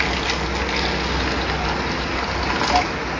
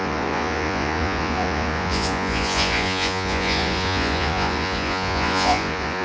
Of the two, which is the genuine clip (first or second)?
first